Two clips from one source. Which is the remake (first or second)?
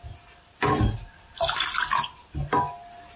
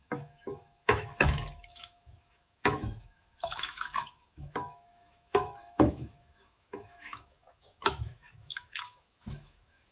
second